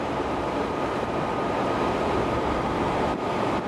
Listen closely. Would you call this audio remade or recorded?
remade